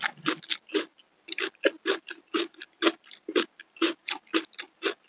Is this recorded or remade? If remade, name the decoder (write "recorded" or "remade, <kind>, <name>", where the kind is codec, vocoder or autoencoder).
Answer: recorded